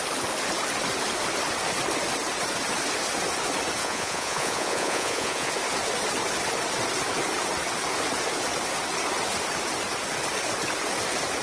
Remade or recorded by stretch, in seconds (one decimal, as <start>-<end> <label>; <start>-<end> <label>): 0.0-3.8 recorded; 3.8-5.5 remade; 5.5-11.4 recorded